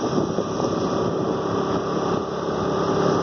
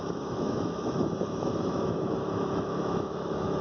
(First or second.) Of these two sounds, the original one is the first